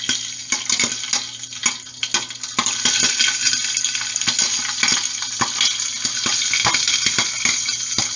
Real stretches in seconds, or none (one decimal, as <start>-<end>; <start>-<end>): 0.0-8.2